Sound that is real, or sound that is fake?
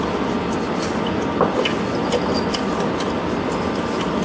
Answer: real